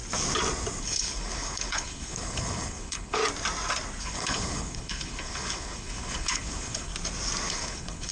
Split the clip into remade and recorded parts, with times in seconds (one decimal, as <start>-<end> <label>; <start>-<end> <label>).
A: 0.0-0.8 recorded; 0.8-3.2 remade; 3.2-4.0 recorded; 4.0-6.9 remade; 6.9-7.5 recorded; 7.5-8.1 remade